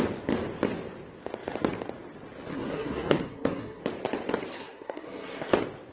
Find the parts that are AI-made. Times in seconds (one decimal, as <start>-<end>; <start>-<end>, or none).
2.5-3.8; 4.5-5.5

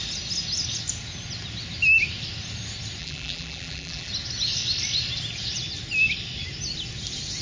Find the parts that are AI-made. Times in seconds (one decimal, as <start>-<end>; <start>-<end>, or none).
3.0-4.1

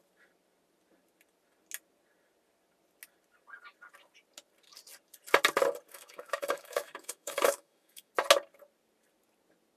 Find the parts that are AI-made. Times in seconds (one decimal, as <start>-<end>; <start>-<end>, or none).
5.9-8.1

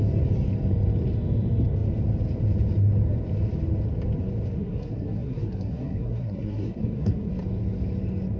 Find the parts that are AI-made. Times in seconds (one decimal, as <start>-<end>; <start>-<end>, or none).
4.6-7.3

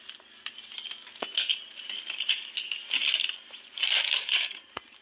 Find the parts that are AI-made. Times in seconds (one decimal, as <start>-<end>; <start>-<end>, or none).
none